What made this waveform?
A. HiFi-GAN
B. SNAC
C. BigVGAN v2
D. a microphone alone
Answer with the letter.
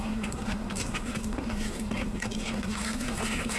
B